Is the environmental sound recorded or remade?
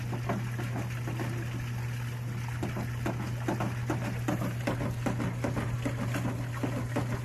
recorded